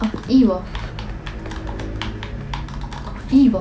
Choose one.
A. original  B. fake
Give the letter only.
A